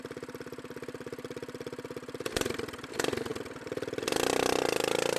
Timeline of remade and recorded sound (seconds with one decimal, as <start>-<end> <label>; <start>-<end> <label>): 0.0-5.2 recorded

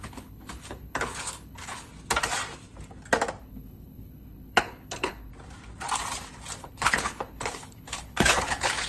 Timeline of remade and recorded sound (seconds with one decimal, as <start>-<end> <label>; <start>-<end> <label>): 0.0-1.9 remade; 1.9-3.4 recorded; 3.4-5.3 remade; 5.3-6.6 recorded; 6.6-8.9 remade

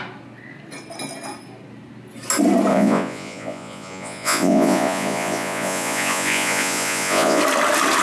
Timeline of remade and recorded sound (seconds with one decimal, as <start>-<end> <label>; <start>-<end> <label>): 0.0-2.7 recorded; 2.7-7.4 remade; 7.4-8.0 recorded